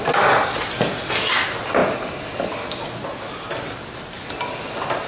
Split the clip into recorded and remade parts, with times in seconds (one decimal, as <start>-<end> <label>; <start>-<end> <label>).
0.0-5.1 recorded

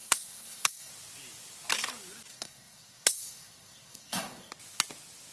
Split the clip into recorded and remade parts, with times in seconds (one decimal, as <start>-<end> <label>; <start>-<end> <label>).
0.0-0.9 remade; 0.9-2.3 recorded; 2.3-4.5 remade; 4.5-5.3 recorded

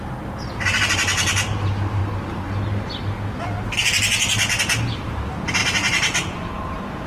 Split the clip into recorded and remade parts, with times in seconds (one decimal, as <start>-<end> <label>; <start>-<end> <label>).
0.0-2.0 remade; 2.0-4.6 recorded; 4.6-5.6 remade; 5.6-7.1 recorded

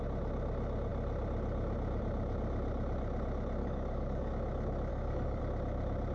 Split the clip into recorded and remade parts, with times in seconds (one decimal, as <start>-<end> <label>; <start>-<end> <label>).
0.0-3.6 recorded; 3.6-4.3 remade; 4.3-4.9 recorded; 4.9-5.4 remade; 5.4-6.1 recorded

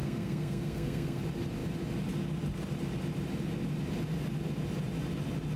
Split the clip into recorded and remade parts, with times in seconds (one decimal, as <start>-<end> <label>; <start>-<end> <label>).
0.0-1.2 remade; 1.2-5.6 recorded

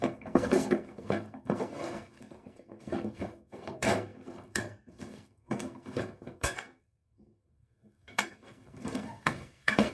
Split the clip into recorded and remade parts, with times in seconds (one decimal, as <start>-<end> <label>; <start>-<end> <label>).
0.0-9.9 remade

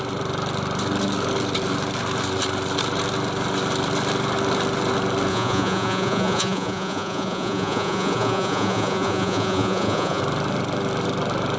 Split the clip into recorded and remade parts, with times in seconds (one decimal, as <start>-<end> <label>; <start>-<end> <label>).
0.0-5.3 recorded; 5.3-10.2 remade; 10.2-11.6 recorded